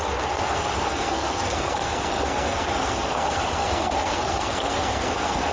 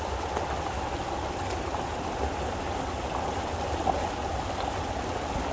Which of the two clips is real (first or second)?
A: second